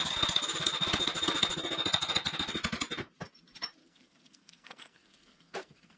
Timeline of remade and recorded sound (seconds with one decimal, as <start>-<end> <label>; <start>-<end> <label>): 0.0-3.8 recorded; 3.8-6.0 remade